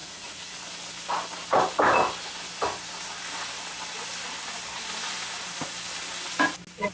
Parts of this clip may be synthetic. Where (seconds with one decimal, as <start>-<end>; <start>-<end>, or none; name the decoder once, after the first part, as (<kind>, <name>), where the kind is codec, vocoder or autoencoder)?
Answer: 0.0-0.5 (vocoder, Vocos)